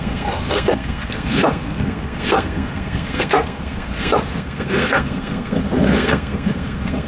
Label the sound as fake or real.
fake